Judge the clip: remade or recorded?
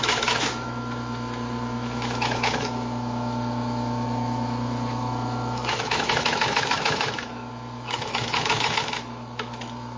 remade